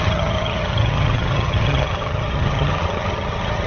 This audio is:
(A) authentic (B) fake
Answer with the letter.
B